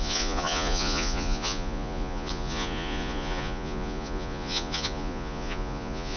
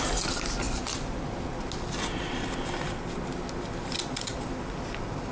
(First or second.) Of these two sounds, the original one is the second